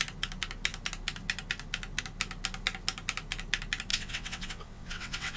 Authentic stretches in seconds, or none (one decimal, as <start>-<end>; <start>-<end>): 0.0-3.9

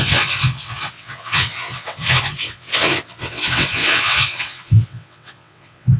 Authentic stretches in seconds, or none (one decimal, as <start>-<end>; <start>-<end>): none

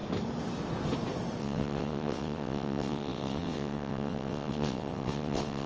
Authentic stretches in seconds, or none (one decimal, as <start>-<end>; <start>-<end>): 0.0-1.4

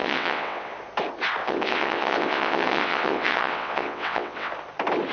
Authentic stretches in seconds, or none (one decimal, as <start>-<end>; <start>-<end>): 0.7-1.4; 4.5-5.1

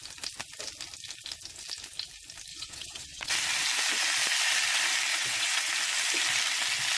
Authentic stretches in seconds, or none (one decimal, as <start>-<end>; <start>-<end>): 0.0-2.5; 3.3-5.1; 5.7-7.0

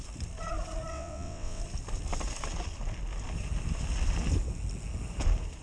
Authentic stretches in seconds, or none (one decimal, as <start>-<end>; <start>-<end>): 0.0-0.9; 1.6-5.6

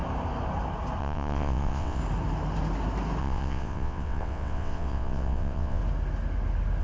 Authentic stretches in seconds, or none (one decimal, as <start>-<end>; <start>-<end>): 0.0-1.0; 2.0-3.2; 5.8-6.8